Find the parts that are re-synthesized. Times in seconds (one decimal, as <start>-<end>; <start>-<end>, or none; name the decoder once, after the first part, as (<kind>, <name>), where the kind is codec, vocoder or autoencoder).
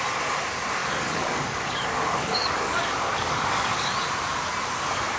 0.8-3.9 (codec, DAC)